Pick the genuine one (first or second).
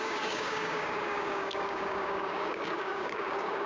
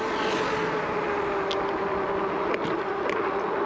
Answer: second